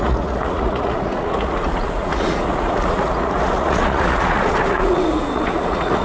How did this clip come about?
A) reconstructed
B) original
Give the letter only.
A